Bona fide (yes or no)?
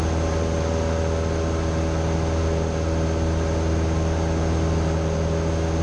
yes